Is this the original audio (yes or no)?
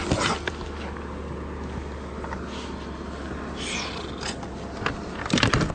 yes